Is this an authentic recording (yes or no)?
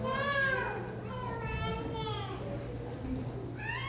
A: yes